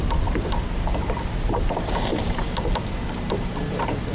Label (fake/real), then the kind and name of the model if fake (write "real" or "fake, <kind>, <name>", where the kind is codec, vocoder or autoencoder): real